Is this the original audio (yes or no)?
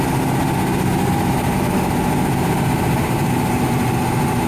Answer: yes